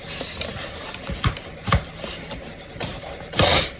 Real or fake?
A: fake